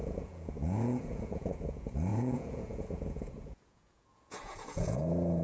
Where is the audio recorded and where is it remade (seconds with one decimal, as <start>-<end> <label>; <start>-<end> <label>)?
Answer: 0.0-5.4 remade